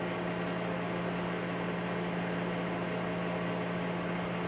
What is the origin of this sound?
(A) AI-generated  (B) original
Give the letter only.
B